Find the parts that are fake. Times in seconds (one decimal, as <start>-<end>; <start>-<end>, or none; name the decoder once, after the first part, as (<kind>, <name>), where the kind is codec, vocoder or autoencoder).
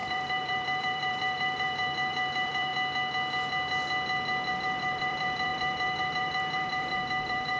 0.0-2.7 (vocoder, BigVGAN v2); 4.5-7.6